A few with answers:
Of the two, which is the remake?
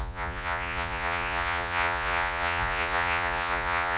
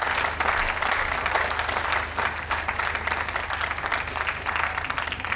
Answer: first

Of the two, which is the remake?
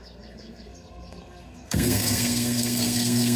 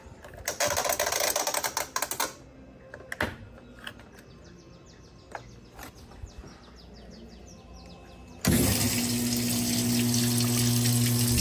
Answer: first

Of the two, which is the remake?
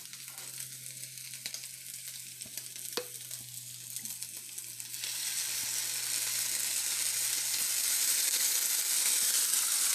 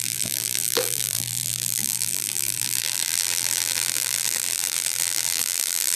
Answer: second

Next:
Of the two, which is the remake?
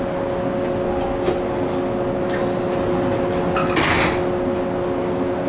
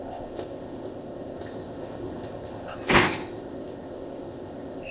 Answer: second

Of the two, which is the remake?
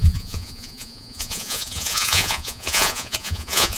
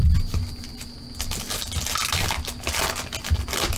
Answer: first